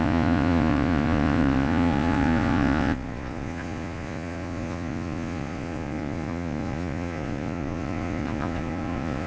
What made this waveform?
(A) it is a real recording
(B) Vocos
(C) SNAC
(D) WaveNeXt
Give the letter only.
B